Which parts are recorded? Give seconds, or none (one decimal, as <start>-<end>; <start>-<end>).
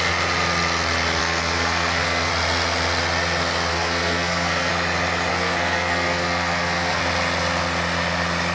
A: 0.0-1.2; 2.3-3.7; 4.7-5.3; 7.0-8.5